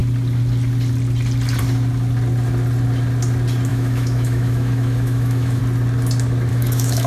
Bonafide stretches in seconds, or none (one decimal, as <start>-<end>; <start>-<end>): 0.0-3.7; 5.6-6.5